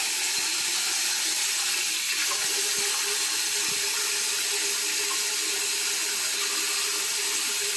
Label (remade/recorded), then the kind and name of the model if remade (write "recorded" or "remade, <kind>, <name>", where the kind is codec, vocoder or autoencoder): recorded